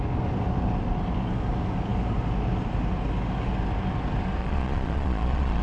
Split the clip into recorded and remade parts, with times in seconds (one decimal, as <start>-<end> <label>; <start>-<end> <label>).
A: 0.0-4.4 recorded; 4.4-5.6 remade